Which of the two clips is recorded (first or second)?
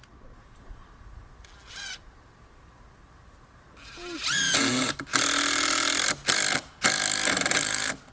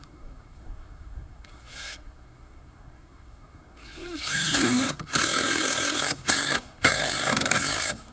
first